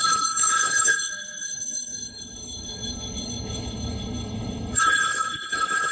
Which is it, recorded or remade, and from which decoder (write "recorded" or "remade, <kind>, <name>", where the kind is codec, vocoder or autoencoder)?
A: remade, codec, HILCodec